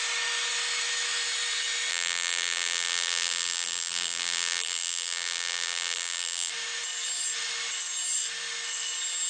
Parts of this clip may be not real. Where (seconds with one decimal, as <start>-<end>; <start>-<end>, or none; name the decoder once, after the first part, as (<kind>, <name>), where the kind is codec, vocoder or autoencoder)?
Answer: 1.9-6.5 (vocoder, BigVGAN v2)